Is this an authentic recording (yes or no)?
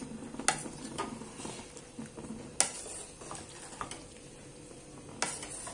yes